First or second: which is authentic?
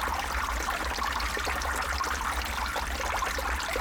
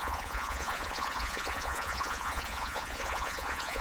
first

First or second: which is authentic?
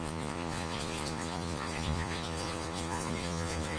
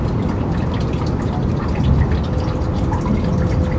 second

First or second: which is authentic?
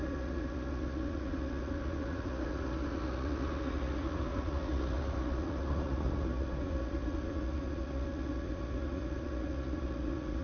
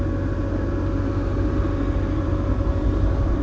second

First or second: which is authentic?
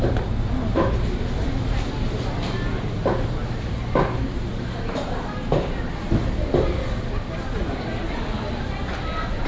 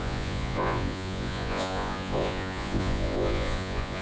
first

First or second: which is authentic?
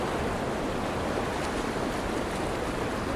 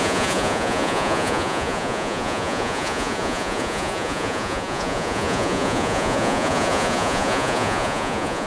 first